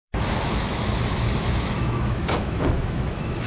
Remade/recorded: remade